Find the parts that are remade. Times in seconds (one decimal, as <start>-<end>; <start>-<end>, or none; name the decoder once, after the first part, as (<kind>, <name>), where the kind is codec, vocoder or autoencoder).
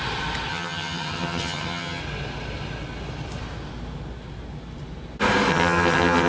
0.5-2.0 (vocoder, HiFi-GAN); 5.5-6.3